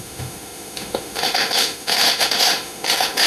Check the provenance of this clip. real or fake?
fake